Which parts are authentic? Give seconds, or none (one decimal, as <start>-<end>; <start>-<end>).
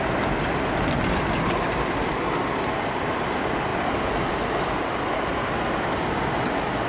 0.0-6.9